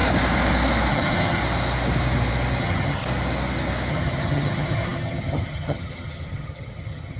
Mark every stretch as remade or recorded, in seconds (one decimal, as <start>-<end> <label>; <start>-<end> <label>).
0.0-0.9 recorded; 0.9-1.4 remade; 1.4-2.6 recorded; 2.6-3.0 remade; 3.0-3.9 recorded; 3.9-7.2 remade